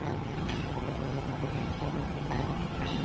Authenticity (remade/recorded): remade